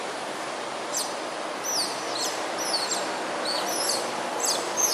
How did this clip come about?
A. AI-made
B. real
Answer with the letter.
B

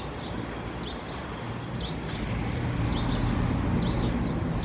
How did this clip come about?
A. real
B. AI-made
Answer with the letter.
A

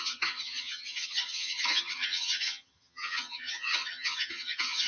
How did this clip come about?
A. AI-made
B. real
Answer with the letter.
A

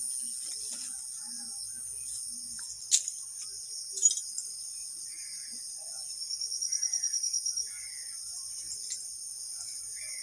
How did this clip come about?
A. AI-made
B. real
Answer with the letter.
B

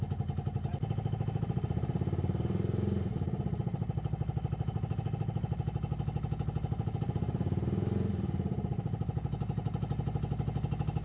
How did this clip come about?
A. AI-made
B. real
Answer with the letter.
B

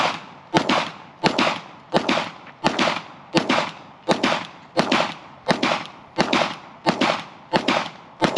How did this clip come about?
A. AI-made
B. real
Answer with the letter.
B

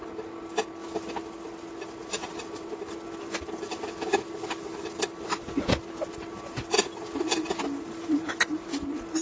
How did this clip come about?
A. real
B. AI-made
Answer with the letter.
A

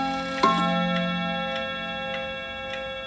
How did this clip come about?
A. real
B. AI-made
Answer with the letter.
A